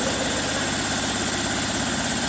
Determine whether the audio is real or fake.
real